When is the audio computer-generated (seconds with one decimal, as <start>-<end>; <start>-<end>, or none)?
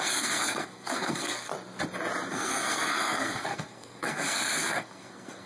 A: 0.0-1.5; 2.3-5.5